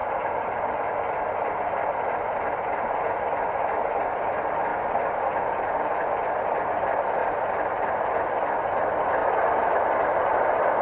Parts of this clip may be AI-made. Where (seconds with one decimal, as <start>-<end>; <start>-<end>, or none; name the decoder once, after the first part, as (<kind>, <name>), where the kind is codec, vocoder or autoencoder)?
0.0-4.7 (vocoder, BigVGAN v2); 6.2-7.2; 7.8-10.8